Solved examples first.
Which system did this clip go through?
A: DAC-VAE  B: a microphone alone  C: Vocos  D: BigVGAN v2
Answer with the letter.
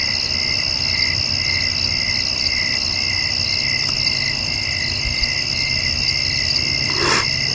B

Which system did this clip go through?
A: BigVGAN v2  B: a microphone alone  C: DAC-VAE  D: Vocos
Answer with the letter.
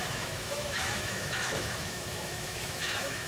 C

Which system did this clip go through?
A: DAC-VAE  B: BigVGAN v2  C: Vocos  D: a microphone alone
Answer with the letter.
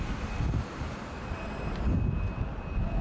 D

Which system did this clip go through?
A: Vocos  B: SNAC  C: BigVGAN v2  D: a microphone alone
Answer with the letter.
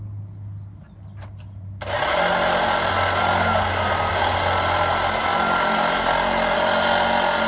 D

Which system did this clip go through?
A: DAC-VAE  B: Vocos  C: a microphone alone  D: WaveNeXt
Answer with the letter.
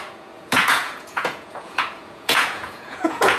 B